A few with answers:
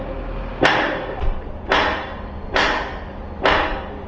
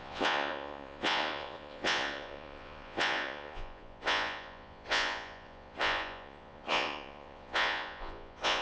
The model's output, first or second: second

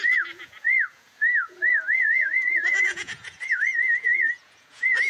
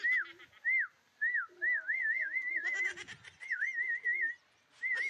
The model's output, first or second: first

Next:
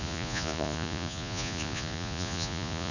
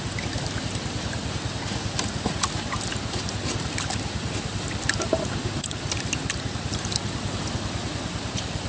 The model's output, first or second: first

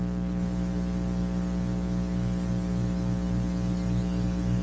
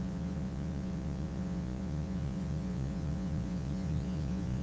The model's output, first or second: second